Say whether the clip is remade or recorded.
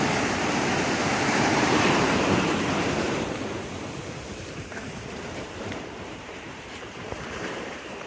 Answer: remade